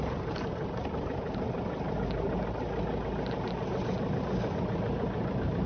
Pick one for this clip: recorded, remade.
recorded